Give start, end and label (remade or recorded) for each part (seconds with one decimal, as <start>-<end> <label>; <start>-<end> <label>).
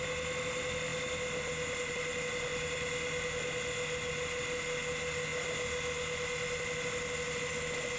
0.0-8.0 recorded